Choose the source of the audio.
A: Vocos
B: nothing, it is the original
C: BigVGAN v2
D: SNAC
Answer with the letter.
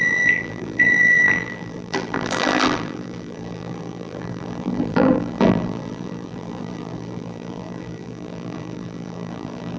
C